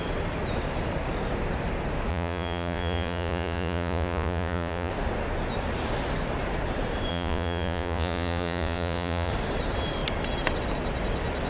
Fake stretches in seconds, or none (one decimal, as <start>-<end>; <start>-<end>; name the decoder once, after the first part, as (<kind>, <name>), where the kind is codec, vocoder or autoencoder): 2.1-4.9 (vocoder, Vocos); 7.1-9.3